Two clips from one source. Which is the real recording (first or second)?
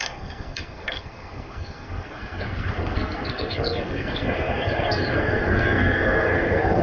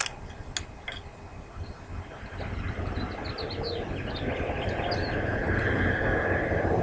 second